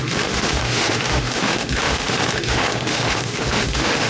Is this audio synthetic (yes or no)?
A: yes